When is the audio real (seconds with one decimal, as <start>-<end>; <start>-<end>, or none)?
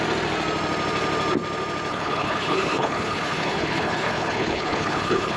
0.0-1.9